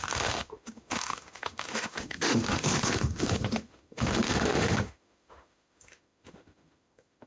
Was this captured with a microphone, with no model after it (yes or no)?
no